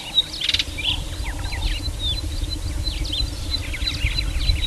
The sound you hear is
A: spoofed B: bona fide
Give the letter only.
B